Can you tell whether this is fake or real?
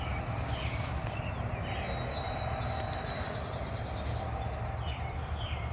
real